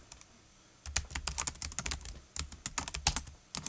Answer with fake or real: real